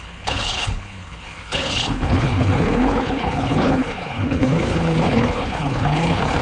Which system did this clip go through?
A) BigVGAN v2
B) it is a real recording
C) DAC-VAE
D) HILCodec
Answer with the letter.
D